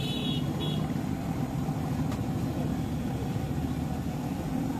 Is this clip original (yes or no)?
yes